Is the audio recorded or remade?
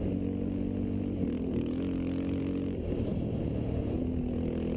recorded